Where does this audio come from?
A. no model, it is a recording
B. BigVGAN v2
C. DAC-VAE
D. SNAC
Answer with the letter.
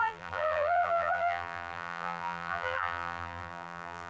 B